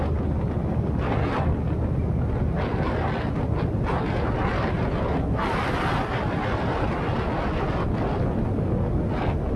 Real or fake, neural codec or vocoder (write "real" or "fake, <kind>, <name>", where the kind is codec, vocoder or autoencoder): real